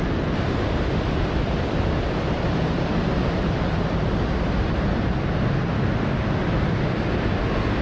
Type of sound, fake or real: real